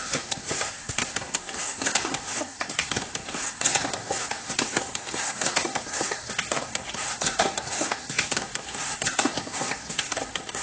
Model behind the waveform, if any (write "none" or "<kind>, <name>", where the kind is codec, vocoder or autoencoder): codec, SNAC